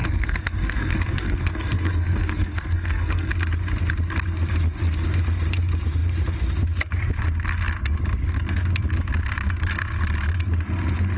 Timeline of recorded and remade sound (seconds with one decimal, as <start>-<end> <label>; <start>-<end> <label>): 0.0-3.3 remade; 3.3-11.2 recorded

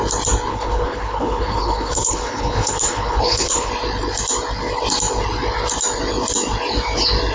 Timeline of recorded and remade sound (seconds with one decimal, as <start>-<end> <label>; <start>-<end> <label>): 0.0-0.5 recorded; 0.5-3.7 remade; 3.7-7.3 recorded

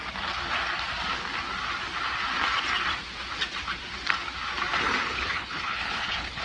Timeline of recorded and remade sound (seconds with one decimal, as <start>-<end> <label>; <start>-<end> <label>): 0.0-5.0 recorded; 5.0-6.4 remade

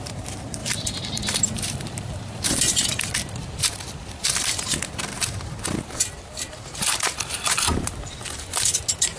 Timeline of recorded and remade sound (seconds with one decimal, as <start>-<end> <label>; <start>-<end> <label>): 0.0-2.9 remade; 2.9-3.4 recorded; 3.4-9.2 remade

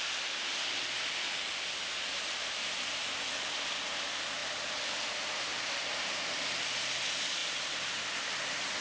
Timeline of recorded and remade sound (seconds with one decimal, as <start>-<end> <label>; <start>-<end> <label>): 0.0-8.8 recorded

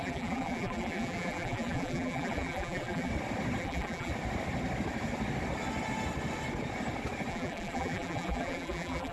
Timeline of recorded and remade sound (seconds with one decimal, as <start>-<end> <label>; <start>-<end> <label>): 0.0-3.1 remade; 3.1-3.6 recorded; 3.6-4.1 remade; 4.1-7.3 recorded; 7.3-9.1 remade

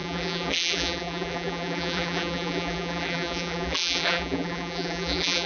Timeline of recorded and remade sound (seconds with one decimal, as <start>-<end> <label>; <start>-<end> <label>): 0.0-5.5 remade